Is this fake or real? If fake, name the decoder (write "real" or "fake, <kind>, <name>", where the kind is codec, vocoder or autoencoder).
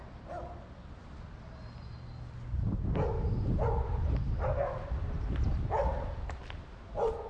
real